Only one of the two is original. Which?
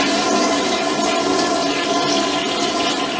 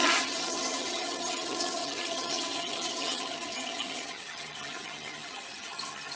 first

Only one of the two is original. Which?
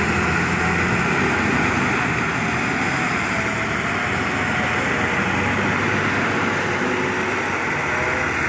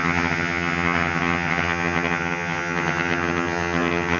first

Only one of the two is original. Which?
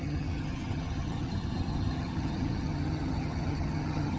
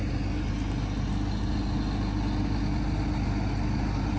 second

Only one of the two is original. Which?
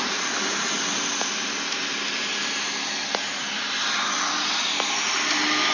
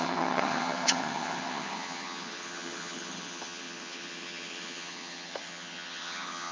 first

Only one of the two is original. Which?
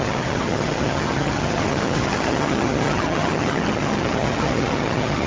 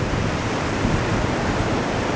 second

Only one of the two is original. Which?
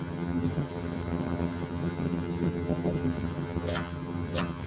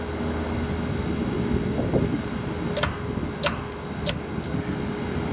second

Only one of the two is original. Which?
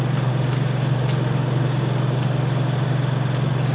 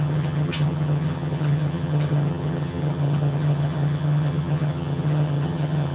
first